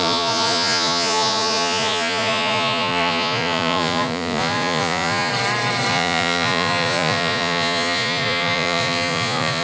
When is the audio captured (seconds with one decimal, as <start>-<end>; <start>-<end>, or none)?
5.3-5.9